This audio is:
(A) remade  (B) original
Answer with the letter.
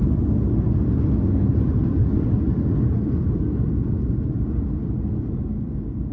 B